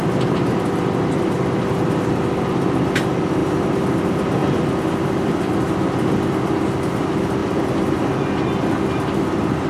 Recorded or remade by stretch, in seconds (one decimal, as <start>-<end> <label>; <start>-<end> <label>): 0.0-4.4 recorded; 4.4-5.6 remade; 5.6-7.4 recorded; 7.4-8.0 remade; 8.0-9.7 recorded